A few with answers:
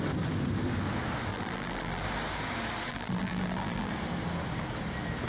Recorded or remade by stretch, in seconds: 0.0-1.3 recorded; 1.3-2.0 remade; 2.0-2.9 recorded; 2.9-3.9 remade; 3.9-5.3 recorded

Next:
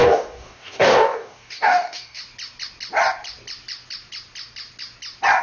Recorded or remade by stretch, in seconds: 0.0-2.2 remade; 2.2-5.4 recorded

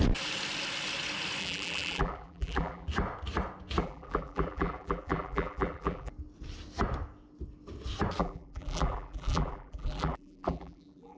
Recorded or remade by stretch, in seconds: 0.0-1.4 recorded; 1.4-2.9 remade; 2.9-3.8 recorded; 3.8-6.1 remade; 6.1-8.2 recorded; 8.2-11.2 remade

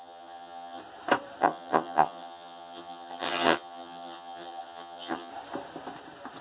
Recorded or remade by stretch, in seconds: 0.0-0.8 remade; 0.8-1.4 recorded; 1.4-5.3 remade; 5.3-6.4 recorded

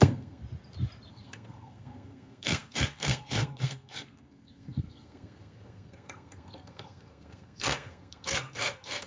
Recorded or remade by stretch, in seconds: 0.0-0.4 remade; 0.4-1.1 recorded; 1.1-9.1 remade

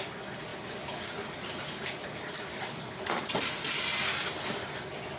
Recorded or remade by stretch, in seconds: 0.0-0.5 recorded; 0.5-3.6 remade; 3.6-5.2 recorded

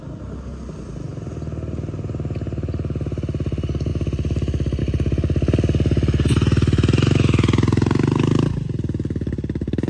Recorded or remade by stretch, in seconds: 0.0-9.9 recorded